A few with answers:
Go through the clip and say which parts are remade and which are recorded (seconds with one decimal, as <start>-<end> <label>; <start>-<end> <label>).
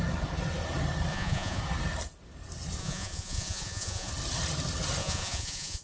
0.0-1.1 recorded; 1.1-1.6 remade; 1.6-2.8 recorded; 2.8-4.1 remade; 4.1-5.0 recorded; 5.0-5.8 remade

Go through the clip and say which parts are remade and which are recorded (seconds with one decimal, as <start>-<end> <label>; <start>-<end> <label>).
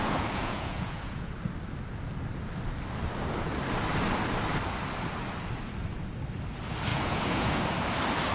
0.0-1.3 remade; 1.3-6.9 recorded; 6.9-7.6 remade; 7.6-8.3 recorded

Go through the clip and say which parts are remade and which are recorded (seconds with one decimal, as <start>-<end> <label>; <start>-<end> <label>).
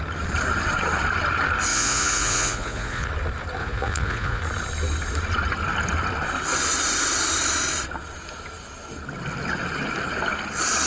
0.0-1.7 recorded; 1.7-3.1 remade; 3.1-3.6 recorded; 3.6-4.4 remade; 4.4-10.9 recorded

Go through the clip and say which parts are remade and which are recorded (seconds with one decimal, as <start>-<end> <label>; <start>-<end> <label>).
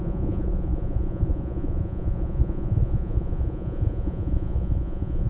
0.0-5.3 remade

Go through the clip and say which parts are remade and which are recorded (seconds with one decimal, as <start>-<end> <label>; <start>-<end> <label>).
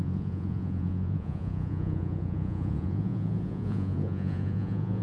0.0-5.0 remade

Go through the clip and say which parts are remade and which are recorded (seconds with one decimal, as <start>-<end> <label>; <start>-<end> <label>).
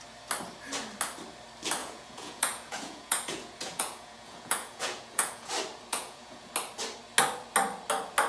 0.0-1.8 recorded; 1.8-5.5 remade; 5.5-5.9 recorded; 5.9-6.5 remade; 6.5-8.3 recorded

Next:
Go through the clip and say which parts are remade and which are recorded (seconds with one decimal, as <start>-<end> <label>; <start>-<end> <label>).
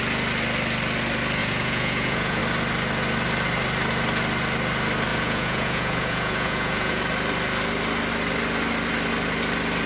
0.0-1.4 recorded; 1.4-2.4 remade; 2.4-5.1 recorded; 5.1-7.0 remade; 7.0-9.9 recorded